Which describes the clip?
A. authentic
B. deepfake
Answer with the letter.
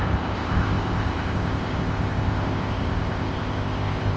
B